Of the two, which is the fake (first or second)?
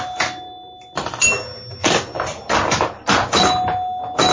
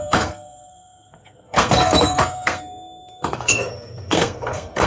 second